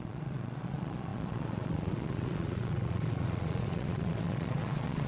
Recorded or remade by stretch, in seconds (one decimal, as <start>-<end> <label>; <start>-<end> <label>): 0.0-5.1 remade